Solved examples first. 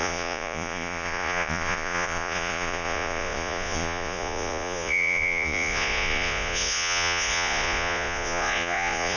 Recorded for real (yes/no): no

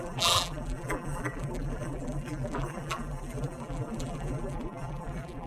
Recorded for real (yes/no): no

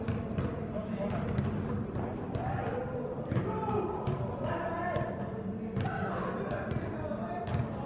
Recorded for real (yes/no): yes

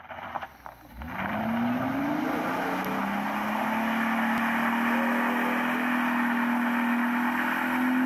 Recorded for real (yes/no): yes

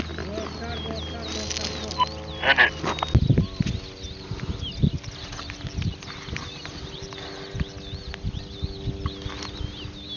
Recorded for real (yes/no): yes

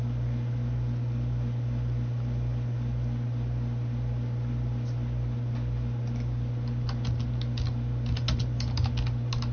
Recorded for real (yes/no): yes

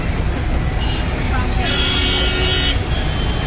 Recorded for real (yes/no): yes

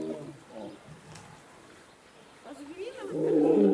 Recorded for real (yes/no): yes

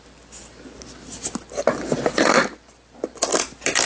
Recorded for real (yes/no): no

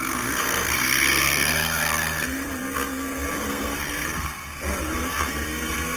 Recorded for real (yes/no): no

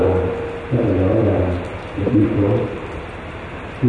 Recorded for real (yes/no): no